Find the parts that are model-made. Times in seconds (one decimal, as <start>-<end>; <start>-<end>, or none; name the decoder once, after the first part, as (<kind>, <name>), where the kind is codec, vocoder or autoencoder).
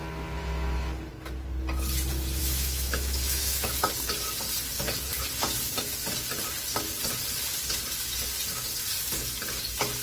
2.4-3.9 (autoencoder, DAC-VAE)